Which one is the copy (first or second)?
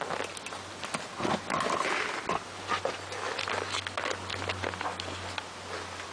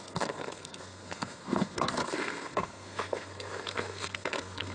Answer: second